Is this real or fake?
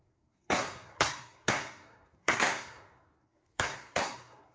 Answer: fake